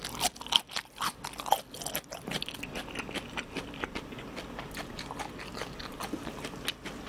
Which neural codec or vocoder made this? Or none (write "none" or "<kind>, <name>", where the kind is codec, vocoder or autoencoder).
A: none